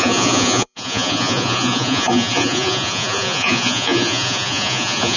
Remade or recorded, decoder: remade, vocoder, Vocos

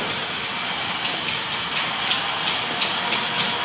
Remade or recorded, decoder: recorded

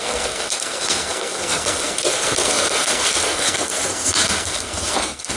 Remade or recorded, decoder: remade, codec, SNAC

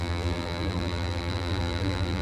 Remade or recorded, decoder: remade, vocoder, BigVGAN v2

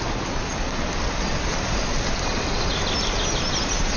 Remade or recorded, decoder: recorded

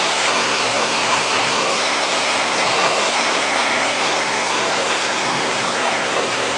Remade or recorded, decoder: remade, codec, SNAC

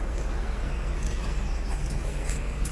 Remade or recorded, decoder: remade, codec, SNAC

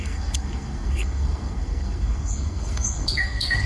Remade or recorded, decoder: remade, codec, SNAC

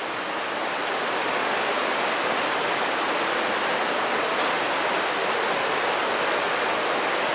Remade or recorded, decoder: recorded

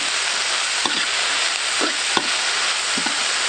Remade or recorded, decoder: recorded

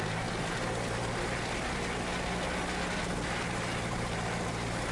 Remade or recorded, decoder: recorded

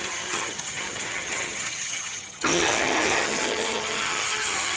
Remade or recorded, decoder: remade, vocoder, HiFi-GAN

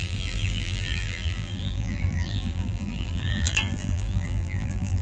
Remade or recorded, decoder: remade, vocoder, BigVGAN v2